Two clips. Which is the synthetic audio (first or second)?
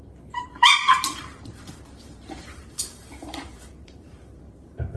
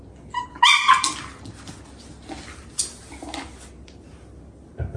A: first